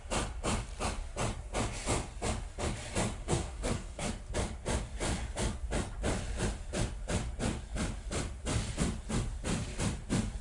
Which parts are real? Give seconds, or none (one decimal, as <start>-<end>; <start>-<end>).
0.0-3.2; 4.1-10.4